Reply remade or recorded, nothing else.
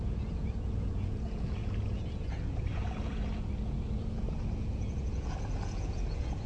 remade